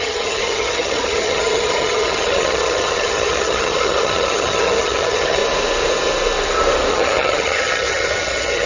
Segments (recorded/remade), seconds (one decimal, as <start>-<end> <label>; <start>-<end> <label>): 0.0-5.4 remade; 5.4-6.9 recorded; 6.9-8.7 remade